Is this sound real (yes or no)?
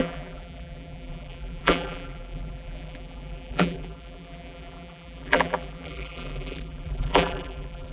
no